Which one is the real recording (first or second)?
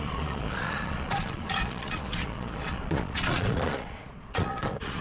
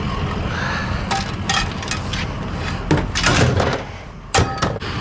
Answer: second